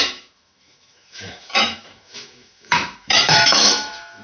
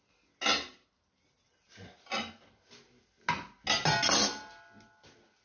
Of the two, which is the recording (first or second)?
second